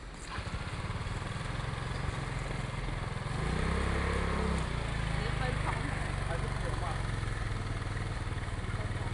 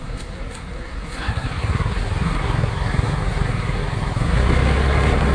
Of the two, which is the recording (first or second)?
first